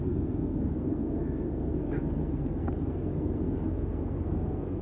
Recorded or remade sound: remade